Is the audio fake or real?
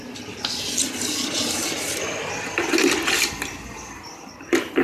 real